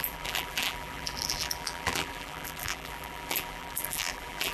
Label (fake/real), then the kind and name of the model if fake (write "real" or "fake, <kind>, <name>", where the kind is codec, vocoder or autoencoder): fake, vocoder, BigVGAN v2